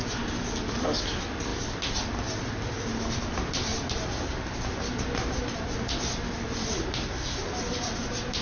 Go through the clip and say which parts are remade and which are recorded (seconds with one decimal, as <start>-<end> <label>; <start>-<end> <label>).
0.0-8.4 recorded